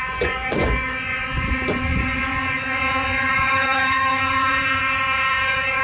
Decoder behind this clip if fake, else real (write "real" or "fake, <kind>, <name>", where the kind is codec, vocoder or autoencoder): fake, vocoder, Vocos